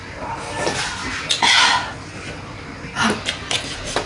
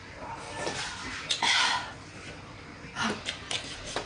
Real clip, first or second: first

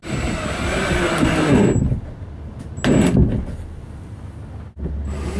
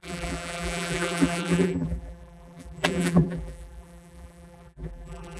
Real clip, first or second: first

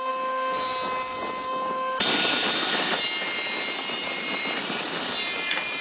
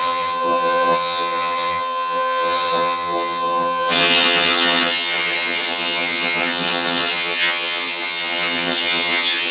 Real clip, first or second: first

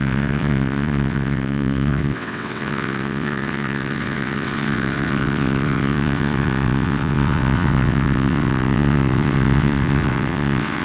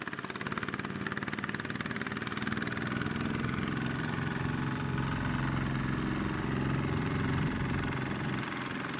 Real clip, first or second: second